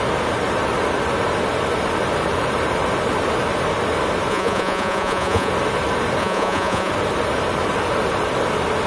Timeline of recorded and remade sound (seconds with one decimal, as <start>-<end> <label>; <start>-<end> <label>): 0.0-4.3 recorded; 4.3-5.5 remade; 5.5-6.2 recorded; 6.2-6.9 remade; 6.9-8.9 recorded